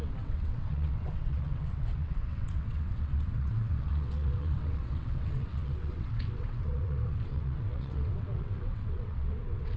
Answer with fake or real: fake